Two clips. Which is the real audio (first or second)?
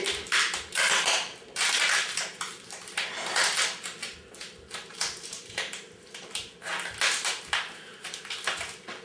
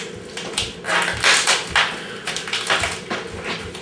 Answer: second